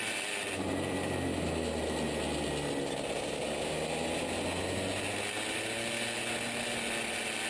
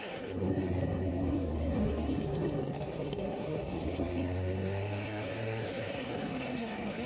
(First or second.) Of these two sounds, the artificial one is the second